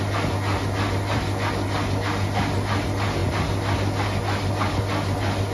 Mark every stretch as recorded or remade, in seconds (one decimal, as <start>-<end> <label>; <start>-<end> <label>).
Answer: 0.0-5.5 recorded